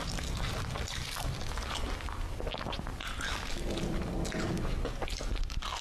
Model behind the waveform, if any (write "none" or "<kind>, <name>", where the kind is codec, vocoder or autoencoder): none